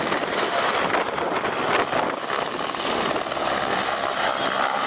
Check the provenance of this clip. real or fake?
real